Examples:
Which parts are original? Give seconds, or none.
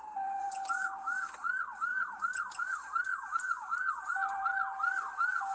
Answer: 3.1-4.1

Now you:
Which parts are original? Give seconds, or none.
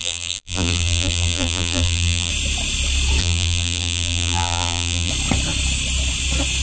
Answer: 2.3-3.2; 5.1-6.6